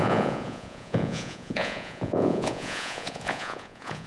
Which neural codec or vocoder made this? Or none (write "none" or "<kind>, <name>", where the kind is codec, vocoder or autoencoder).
vocoder, Vocos